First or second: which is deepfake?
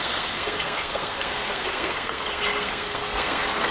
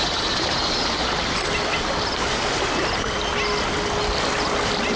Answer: first